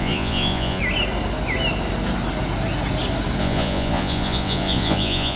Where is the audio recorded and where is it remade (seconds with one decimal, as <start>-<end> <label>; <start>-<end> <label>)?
0.0-0.8 remade; 0.8-3.4 recorded; 3.4-5.4 remade